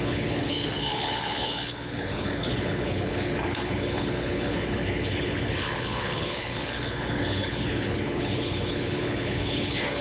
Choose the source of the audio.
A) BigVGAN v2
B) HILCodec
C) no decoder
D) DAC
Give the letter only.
B